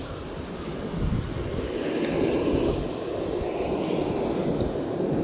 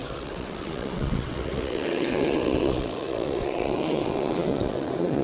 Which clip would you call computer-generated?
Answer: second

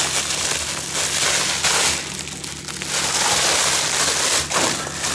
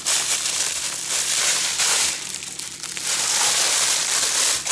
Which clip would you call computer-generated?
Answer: second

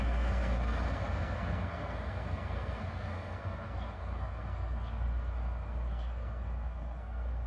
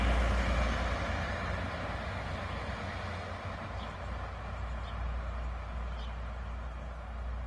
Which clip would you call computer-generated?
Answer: first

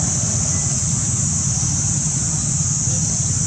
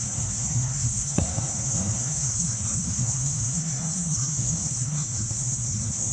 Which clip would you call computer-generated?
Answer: second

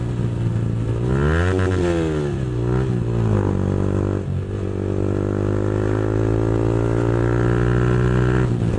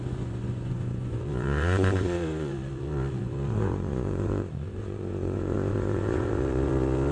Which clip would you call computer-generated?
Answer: second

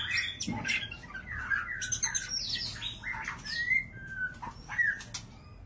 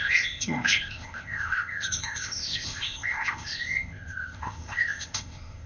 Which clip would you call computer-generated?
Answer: second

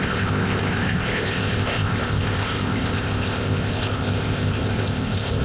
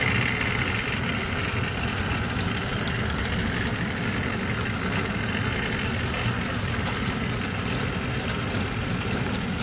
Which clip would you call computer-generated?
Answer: first